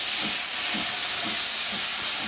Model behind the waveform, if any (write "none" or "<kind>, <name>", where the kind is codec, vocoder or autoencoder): none